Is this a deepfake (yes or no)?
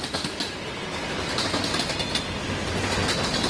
no